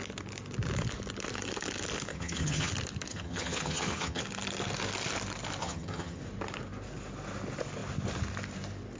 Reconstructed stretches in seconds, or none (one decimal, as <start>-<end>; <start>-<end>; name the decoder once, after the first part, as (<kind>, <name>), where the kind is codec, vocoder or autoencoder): 2.1-2.7 (vocoder, HiFi-GAN); 3.1-4.2; 5.6-6.2